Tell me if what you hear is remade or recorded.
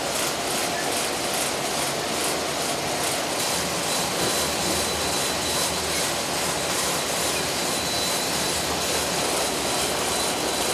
recorded